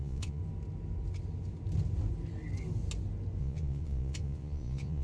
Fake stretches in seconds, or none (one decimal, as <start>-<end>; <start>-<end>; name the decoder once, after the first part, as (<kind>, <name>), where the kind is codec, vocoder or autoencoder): 0.0-0.4 (vocoder, Vocos); 3.4-5.0